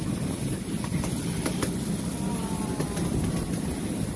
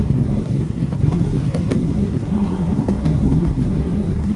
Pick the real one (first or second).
first